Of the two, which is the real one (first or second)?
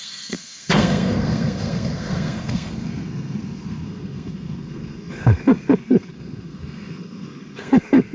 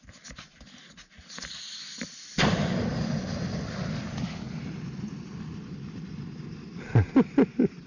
second